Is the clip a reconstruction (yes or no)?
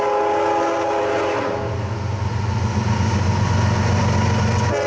no